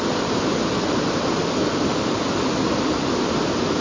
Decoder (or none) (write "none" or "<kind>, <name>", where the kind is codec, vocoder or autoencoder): none